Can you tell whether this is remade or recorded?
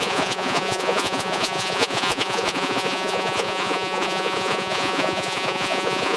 remade